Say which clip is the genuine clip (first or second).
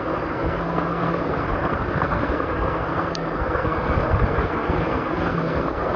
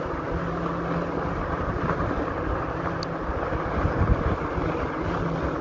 second